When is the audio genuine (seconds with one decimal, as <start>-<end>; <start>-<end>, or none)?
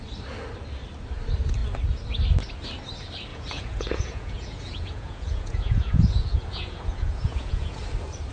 0.0-3.3; 7.8-8.3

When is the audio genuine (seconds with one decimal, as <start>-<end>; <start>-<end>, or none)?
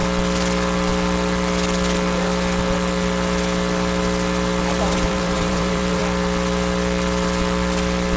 0.0-4.8; 6.0-8.2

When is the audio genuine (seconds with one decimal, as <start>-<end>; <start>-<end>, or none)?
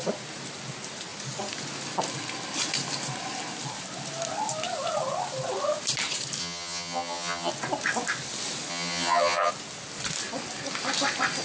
0.0-6.4; 7.5-8.7; 9.5-11.4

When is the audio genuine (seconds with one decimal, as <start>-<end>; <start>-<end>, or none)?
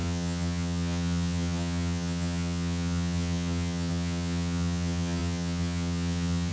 none